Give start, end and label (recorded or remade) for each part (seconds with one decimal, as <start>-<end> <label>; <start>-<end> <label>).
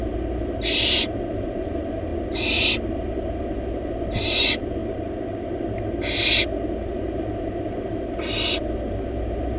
0.0-2.1 remade; 2.1-2.9 recorded; 2.9-4.8 remade; 4.8-6.8 recorded; 6.8-9.6 remade